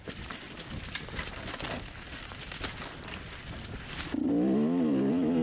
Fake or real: real